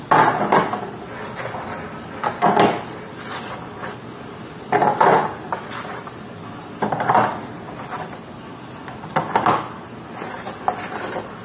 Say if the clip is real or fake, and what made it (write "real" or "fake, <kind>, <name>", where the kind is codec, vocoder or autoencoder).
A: real